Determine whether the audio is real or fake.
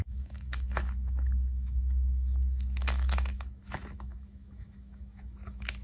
fake